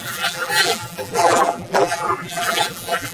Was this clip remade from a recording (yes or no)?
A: yes